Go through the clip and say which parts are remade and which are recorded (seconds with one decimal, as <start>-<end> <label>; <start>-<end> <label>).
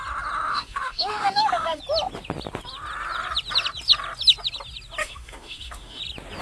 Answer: 0.0-0.5 recorded; 0.5-1.8 remade; 1.8-5.0 recorded; 5.0-6.0 remade; 6.0-6.4 recorded